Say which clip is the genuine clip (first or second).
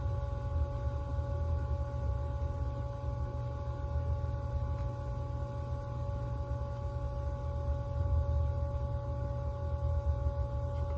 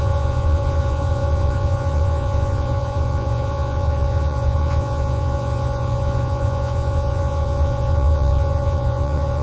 first